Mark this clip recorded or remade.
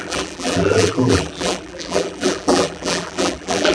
remade